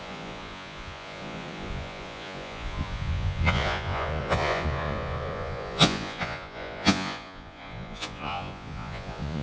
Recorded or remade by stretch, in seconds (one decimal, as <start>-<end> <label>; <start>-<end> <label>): 0.0-9.4 remade